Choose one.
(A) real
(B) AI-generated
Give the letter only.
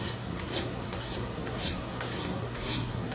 B